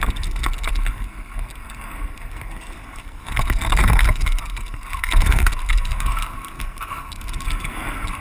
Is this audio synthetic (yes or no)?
yes